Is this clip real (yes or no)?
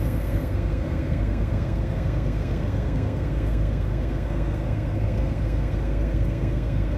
no